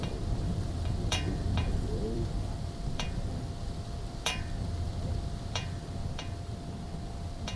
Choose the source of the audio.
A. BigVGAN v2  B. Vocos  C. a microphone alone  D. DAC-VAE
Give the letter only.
A